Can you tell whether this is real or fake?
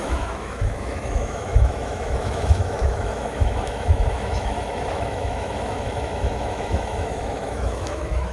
fake